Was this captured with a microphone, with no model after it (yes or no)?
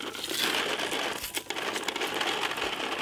yes